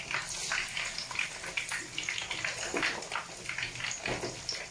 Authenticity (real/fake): real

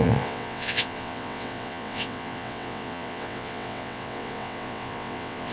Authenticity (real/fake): fake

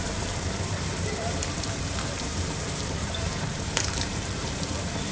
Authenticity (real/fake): fake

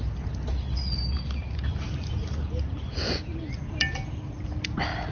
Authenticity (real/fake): real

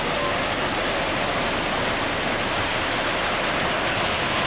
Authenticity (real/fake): real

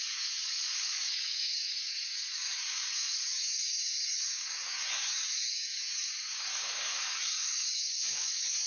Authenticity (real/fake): fake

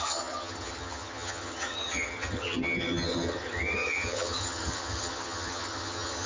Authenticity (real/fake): fake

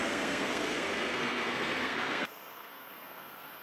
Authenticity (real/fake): fake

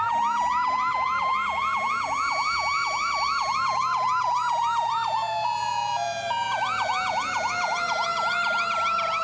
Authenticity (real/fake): fake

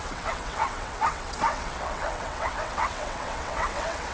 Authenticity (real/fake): fake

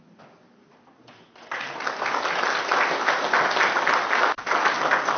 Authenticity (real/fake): real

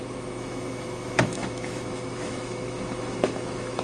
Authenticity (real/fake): fake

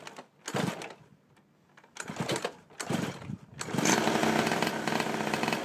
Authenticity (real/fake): real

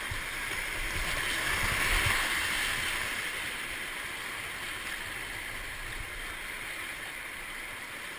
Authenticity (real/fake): real